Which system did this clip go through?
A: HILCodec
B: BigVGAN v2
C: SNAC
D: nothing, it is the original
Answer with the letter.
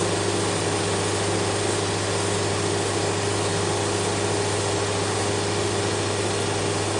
D